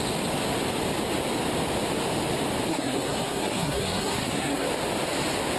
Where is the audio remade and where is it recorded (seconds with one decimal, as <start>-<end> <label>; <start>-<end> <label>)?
0.0-2.7 recorded; 2.7-4.7 remade; 4.7-5.6 recorded